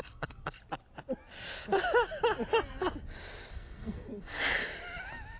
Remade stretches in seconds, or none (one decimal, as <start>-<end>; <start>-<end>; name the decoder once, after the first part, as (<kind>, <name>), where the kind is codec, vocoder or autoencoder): 0.0-0.6 (codec, SNAC); 3.5-4.6